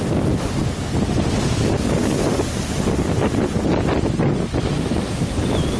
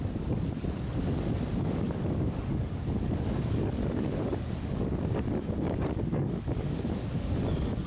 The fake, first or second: second